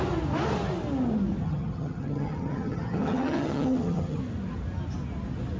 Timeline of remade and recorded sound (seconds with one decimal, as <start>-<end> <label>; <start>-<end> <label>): 0.0-1.4 recorded; 1.4-4.2 remade; 4.2-5.6 recorded